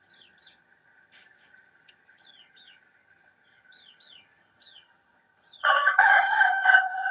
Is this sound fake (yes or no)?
yes